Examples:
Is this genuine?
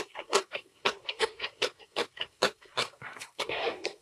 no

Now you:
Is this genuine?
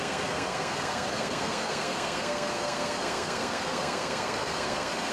no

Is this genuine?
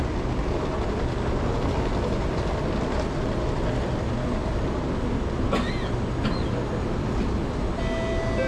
yes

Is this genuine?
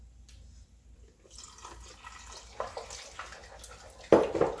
yes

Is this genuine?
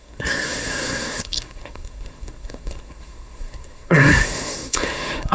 no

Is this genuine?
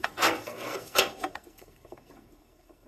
no